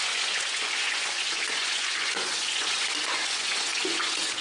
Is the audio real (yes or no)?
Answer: no